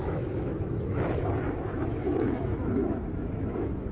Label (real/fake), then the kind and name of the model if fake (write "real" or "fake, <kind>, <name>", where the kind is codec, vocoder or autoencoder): fake, autoencoder, DAC-VAE